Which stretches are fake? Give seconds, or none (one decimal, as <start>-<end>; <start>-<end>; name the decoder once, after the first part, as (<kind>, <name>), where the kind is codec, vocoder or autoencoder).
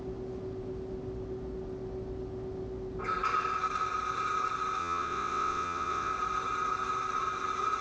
4.8-6.1 (vocoder, WaveNeXt)